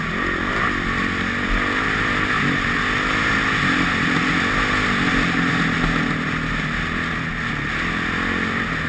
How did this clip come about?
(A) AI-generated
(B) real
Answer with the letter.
B